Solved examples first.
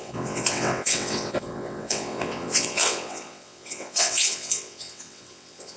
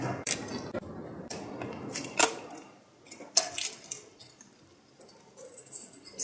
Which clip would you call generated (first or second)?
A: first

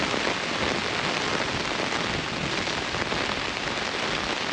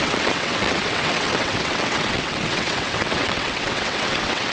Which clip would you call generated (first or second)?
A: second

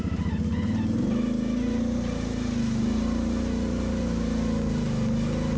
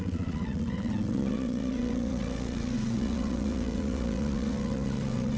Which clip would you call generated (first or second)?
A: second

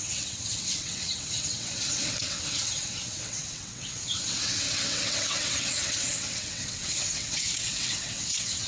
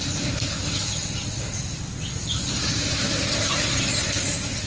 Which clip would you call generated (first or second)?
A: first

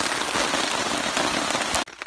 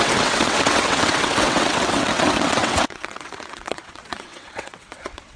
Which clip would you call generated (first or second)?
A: second